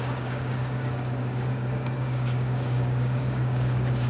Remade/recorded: remade